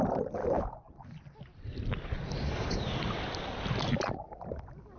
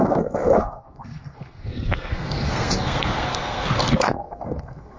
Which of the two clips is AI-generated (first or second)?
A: second